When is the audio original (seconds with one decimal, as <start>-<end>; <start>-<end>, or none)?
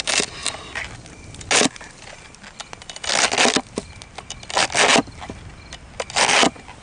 0.0-6.8